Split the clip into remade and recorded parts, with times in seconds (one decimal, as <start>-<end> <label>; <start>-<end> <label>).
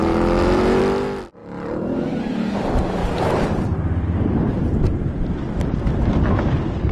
0.0-0.8 remade; 0.8-1.4 recorded; 1.4-2.5 remade; 2.5-3.0 recorded; 3.0-6.1 remade; 6.1-6.9 recorded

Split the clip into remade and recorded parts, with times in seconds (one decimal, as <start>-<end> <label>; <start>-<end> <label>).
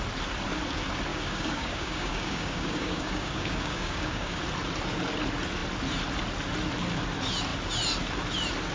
0.0-1.1 recorded; 1.1-4.4 remade; 4.4-8.7 recorded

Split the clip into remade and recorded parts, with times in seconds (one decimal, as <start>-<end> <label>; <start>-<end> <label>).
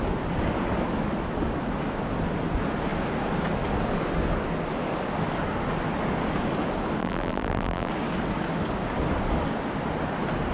0.0-7.0 recorded; 7.0-7.9 remade; 7.9-10.5 recorded